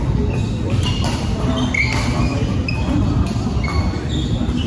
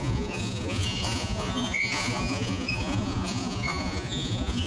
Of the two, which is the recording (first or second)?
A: first